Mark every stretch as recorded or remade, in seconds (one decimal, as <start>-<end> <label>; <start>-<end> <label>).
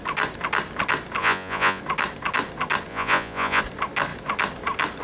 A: 0.0-1.2 recorded; 1.2-1.8 remade; 1.8-2.9 recorded; 2.9-3.6 remade; 3.6-5.0 recorded